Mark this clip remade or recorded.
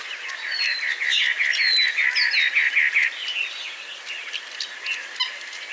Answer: recorded